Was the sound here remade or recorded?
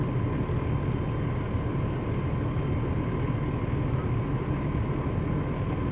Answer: recorded